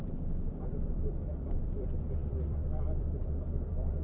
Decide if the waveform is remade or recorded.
remade